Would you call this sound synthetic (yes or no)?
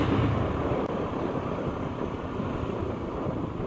yes